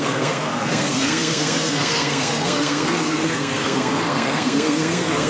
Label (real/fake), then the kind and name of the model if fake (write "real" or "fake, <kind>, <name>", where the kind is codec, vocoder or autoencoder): fake, codec, SNAC